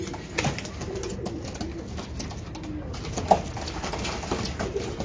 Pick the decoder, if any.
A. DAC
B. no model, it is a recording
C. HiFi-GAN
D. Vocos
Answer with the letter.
B